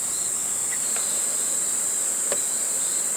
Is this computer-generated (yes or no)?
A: yes